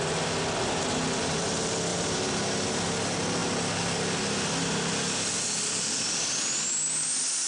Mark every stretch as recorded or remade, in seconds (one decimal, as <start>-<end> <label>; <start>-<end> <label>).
0.0-1.9 recorded; 1.9-2.7 remade; 2.7-7.5 recorded